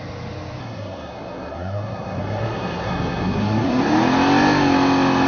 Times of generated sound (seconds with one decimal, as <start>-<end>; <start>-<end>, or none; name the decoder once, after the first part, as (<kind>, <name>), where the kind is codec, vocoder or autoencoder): 0.6-3.8 (codec, SNAC)